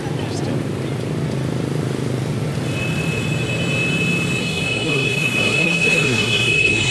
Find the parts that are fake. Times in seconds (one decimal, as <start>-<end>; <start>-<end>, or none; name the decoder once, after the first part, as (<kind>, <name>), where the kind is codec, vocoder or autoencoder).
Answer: 4.4-6.9 (codec, SNAC)